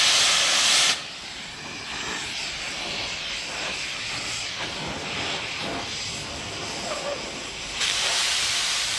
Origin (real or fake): real